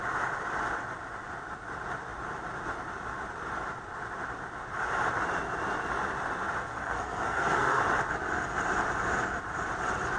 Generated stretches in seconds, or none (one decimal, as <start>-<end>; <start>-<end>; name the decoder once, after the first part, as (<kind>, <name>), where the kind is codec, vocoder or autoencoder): 6.6-7.8 (codec, SNAC)